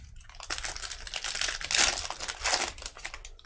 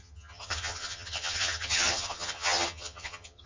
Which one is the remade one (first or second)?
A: second